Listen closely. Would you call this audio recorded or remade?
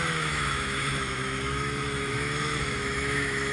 remade